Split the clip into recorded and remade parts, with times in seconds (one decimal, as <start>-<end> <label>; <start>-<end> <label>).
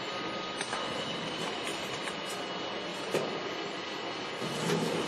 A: 0.0-1.7 recorded; 1.7-2.3 remade; 2.3-5.1 recorded